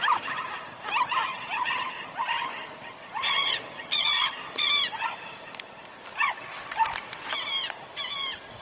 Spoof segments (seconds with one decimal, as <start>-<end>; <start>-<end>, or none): 1.3-2.2; 3.0-4.7